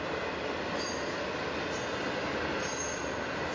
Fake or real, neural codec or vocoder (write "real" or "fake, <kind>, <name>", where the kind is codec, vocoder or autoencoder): real